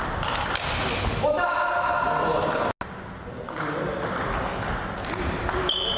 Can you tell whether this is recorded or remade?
recorded